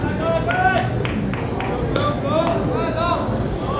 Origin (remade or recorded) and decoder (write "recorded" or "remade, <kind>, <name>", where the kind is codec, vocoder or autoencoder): recorded